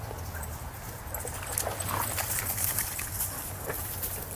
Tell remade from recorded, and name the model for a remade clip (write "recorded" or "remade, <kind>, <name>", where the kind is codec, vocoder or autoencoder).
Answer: recorded